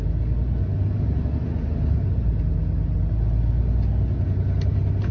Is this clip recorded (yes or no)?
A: yes